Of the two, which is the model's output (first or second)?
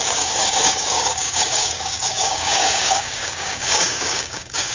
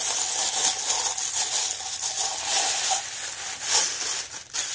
first